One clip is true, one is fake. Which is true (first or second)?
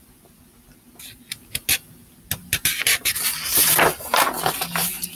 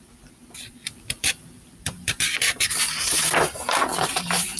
first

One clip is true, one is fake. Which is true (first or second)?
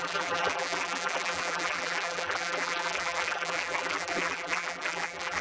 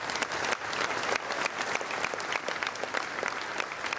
second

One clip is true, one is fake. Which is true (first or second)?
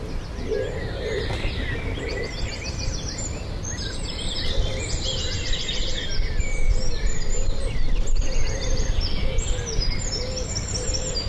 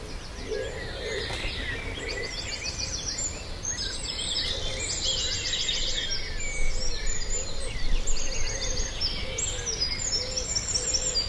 second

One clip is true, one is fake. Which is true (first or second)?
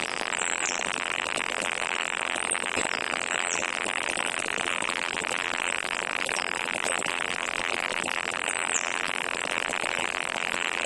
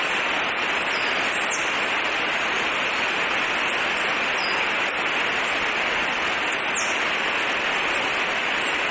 second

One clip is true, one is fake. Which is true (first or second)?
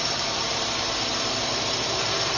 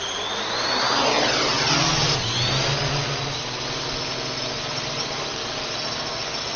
second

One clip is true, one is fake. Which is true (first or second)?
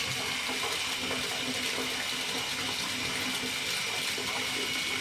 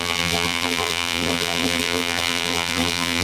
first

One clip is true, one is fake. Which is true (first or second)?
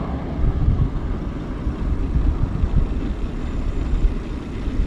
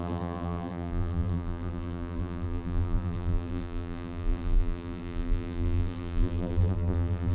first